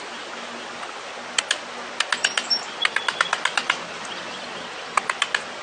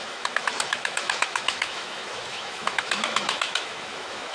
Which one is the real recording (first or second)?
first